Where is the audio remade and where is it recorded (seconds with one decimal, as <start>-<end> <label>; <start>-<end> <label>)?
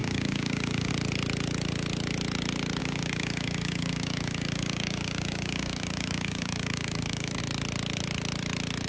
0.0-0.9 remade; 0.9-2.8 recorded; 2.8-7.4 remade; 7.4-8.9 recorded